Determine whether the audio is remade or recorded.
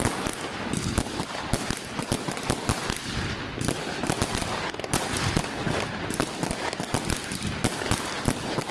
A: recorded